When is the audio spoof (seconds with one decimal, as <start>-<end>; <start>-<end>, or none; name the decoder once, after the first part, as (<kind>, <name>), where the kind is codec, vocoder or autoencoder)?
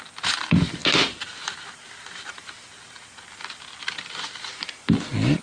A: none